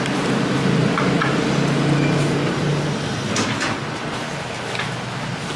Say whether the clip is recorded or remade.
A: recorded